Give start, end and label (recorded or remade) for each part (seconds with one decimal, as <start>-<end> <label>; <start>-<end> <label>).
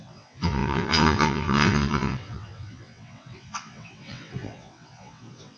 0.0-5.6 remade